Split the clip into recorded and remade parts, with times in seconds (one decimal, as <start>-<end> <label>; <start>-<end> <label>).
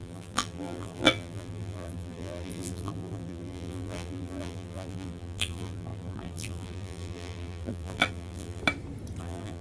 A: 0.0-8.6 remade; 8.6-9.2 recorded; 9.2-9.6 remade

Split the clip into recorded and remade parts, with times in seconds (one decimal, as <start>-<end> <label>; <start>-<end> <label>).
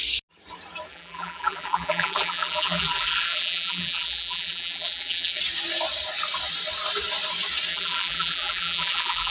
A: 0.0-0.9 recorded; 0.9-5.4 remade; 5.4-7.7 recorded; 7.7-9.3 remade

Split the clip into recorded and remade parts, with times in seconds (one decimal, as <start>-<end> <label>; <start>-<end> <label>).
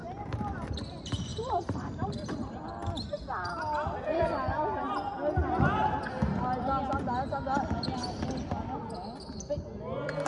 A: 0.0-0.7 remade; 0.7-1.3 recorded; 1.3-2.5 remade; 2.5-10.3 recorded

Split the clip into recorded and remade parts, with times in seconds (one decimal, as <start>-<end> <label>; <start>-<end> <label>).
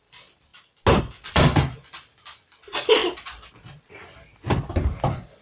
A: 0.0-0.5 remade; 0.5-1.0 recorded; 1.0-3.0 remade; 3.0-5.0 recorded; 5.0-5.4 remade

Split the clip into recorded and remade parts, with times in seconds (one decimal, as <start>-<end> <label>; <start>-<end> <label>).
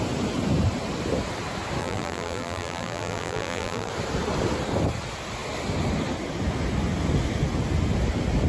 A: 0.0-1.8 recorded; 1.8-3.9 remade; 3.9-8.5 recorded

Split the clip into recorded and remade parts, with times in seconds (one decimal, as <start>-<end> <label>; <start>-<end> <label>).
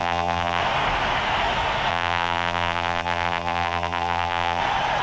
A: 0.0-0.6 remade; 0.6-1.9 recorded; 1.9-4.6 remade; 4.6-5.0 recorded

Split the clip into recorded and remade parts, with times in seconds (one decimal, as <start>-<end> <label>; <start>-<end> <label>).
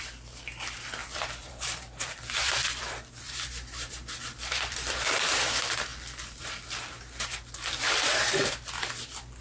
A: 0.0-1.0 recorded; 1.0-5.1 remade; 5.1-9.4 recorded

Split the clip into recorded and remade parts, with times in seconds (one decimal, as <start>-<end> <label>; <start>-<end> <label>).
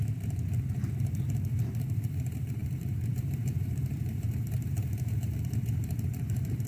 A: 0.0-6.7 remade